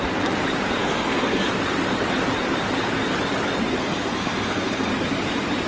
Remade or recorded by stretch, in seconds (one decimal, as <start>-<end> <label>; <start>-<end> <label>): 0.0-0.8 recorded; 0.8-1.5 remade; 1.5-3.8 recorded; 3.8-4.9 remade; 4.9-5.7 recorded